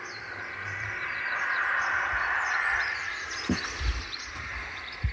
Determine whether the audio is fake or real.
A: fake